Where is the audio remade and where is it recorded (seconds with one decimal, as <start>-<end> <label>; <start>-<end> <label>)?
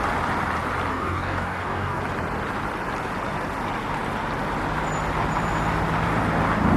0.0-0.9 recorded; 0.9-2.0 remade; 2.0-6.8 recorded